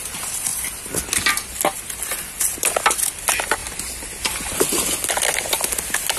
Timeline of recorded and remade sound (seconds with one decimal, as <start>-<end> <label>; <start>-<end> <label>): 0.0-6.2 recorded